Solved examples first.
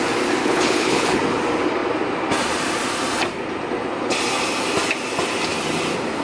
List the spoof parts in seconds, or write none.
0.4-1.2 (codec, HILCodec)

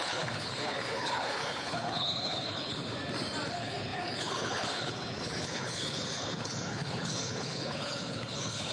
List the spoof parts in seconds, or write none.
0.0-2.9 (codec, HILCodec); 3.5-8.7

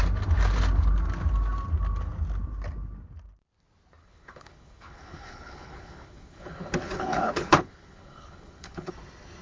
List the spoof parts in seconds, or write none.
4.0-8.9 (codec, HILCodec)

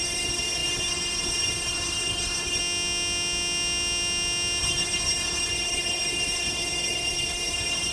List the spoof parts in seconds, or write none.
0.0-2.6 (codec, HILCodec); 4.6-7.9

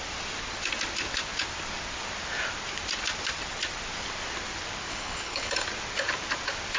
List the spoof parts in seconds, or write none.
4.9-5.5 (codec, HILCodec)

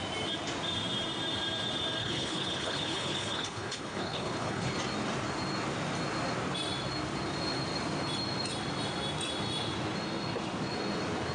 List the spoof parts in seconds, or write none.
2.0-4.8 (codec, HILCodec)